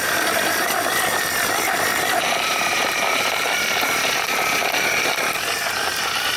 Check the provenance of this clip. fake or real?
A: real